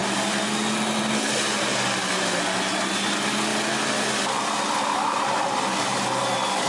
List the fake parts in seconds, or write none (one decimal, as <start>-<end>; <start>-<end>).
none